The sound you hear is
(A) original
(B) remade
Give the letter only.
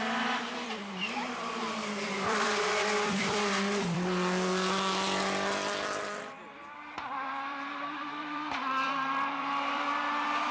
B